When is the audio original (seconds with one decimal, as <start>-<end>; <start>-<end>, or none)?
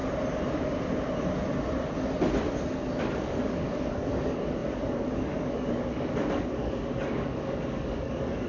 0.0-3.1